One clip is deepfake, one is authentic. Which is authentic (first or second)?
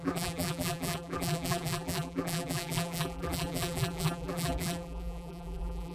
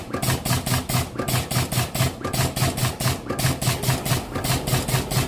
second